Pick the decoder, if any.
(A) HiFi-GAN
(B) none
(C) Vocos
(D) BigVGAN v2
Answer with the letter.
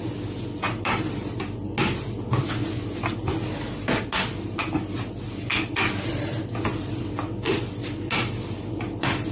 B